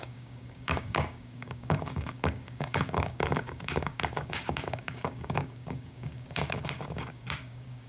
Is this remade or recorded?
remade